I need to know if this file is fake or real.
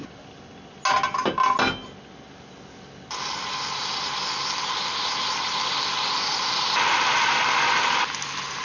real